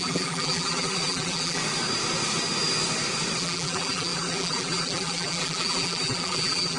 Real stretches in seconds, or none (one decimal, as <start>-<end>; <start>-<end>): 1.6-3.4